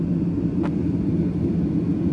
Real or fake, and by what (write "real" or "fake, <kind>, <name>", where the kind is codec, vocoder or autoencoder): real